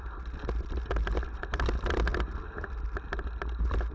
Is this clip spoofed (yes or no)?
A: no